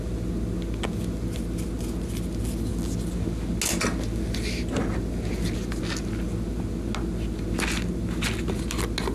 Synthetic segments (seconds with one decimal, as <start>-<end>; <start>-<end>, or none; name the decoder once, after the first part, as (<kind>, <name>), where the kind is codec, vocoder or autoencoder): none